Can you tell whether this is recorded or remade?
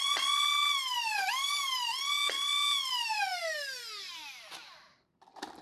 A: recorded